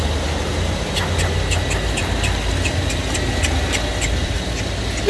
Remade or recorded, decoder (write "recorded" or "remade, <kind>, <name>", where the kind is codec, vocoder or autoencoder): recorded